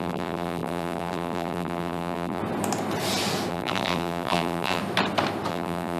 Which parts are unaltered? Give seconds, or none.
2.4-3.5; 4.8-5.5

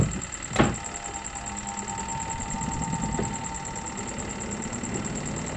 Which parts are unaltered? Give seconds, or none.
0.0-2.1; 3.0-5.6

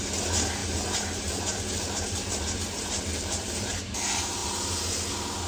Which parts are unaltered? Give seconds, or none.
0.0-0.6; 3.9-5.5

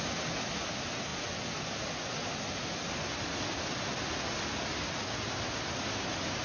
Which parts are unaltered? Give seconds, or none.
0.0-6.4